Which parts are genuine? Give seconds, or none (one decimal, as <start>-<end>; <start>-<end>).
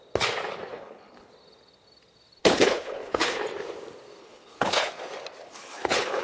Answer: 0.0-0.7; 1.3-2.4; 3.4-4.2; 4.9-5.4